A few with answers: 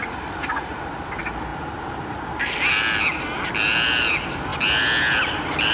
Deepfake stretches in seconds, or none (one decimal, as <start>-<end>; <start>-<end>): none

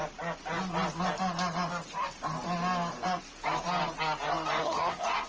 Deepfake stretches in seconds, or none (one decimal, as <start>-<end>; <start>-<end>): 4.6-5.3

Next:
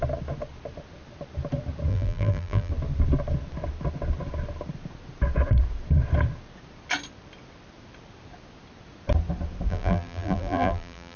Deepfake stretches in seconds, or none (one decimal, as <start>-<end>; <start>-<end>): 1.9-2.7; 9.7-11.2